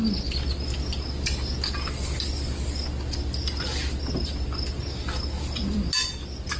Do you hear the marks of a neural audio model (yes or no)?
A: no